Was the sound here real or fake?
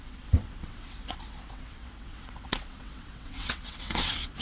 fake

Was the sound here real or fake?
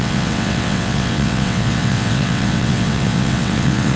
fake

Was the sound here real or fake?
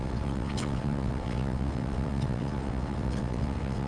fake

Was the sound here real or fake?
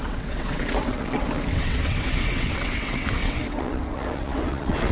fake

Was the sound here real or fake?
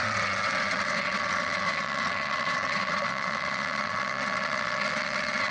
fake